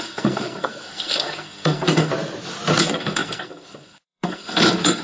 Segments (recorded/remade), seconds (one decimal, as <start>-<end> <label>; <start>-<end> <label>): 0.0-2.1 remade; 2.1-2.8 recorded; 2.8-5.0 remade